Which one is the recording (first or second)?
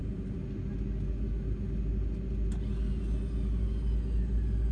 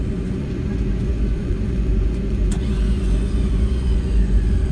first